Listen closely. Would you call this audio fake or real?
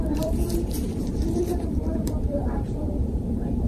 fake